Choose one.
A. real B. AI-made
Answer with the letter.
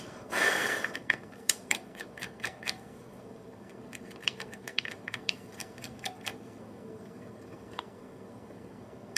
B